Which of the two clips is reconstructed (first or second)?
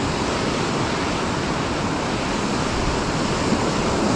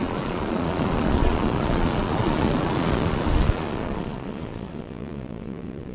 second